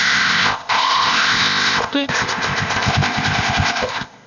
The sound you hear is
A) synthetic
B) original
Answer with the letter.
A